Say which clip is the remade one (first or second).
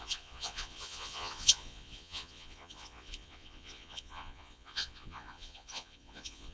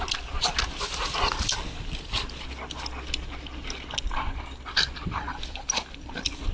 first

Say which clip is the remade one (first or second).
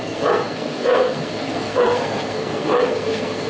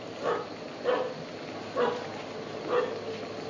first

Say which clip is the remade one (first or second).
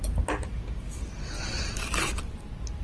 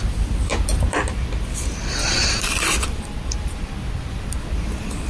second